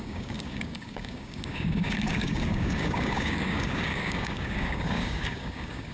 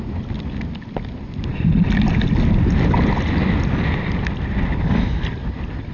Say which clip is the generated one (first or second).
first